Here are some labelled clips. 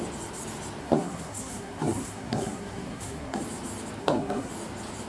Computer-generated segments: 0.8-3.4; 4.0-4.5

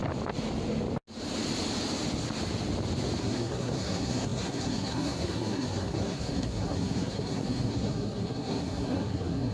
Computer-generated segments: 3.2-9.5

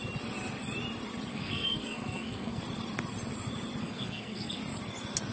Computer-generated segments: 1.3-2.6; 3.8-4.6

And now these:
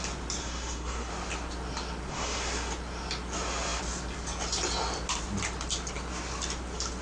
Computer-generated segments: 0.4-1.1; 2.1-2.7

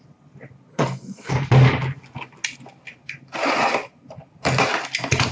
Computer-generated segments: 0.7-1.3

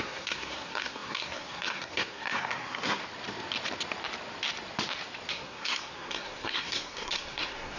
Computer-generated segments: 0.0-3.0; 5.3-7.8

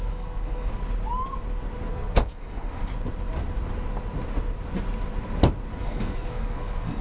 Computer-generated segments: 0.0-0.7; 1.9-2.9; 5.8-7.0